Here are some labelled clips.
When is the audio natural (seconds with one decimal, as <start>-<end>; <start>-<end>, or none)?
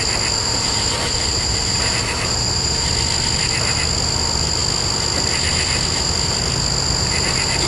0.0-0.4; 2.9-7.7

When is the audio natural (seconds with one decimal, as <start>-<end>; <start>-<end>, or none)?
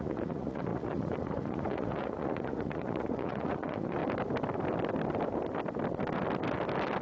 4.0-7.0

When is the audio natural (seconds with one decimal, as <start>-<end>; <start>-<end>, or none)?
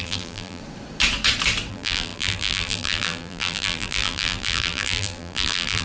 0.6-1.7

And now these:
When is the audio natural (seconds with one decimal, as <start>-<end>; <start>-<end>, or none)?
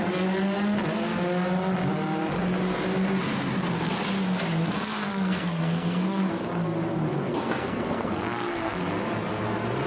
0.0-5.1; 6.3-7.1; 8.8-9.9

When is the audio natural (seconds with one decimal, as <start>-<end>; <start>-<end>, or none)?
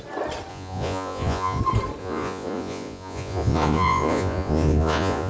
0.0-0.5; 1.6-2.0